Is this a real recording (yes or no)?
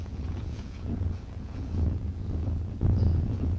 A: no